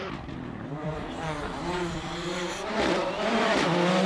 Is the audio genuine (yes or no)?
no